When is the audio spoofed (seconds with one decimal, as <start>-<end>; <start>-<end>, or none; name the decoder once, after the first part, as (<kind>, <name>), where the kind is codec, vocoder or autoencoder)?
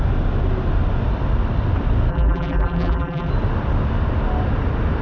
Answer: 2.1-3.3 (vocoder, BigVGAN v2)